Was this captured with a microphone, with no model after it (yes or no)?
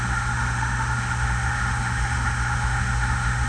no